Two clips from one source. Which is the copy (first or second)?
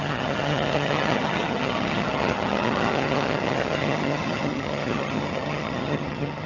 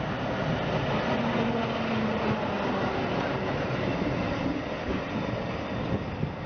first